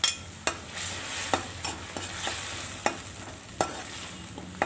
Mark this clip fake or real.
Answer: real